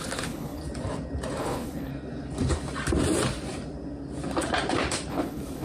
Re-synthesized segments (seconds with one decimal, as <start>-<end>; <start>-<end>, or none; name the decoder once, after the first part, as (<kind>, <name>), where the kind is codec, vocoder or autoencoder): 0.0-0.6 (codec, HILCodec); 1.4-1.9; 5.1-5.6